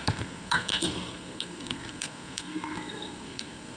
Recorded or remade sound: remade